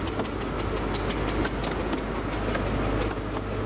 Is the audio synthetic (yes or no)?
no